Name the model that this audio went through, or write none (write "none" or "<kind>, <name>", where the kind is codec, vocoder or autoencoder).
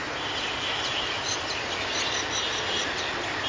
none